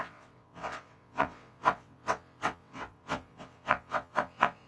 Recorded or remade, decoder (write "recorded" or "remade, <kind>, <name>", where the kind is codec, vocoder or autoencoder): remade, vocoder, WaveNeXt